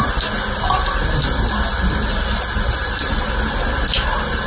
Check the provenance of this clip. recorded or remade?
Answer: recorded